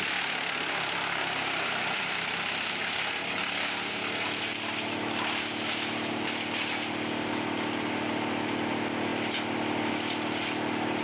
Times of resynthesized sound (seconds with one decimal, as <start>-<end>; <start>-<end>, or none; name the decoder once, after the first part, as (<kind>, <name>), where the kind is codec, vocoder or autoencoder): none